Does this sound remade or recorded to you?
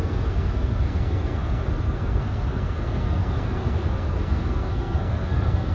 remade